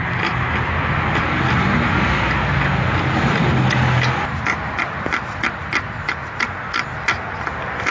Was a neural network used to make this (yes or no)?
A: no